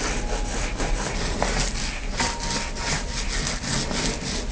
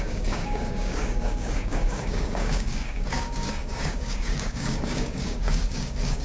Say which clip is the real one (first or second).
first